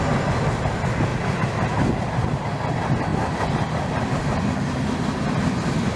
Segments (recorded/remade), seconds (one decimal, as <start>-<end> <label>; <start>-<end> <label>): 0.0-6.0 recorded